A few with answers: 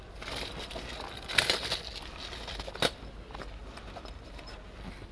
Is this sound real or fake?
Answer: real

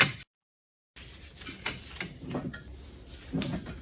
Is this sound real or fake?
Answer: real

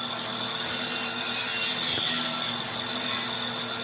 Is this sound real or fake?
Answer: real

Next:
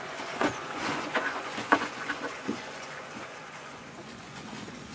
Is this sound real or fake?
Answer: fake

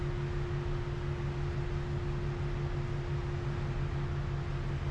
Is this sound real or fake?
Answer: real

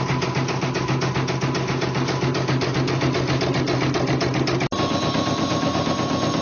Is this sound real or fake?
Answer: real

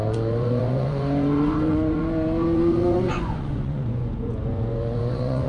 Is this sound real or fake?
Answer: fake